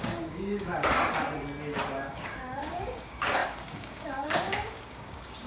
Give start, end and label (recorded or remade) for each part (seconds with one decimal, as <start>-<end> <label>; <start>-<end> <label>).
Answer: 0.0-0.7 remade; 0.7-2.1 recorded; 2.1-5.5 remade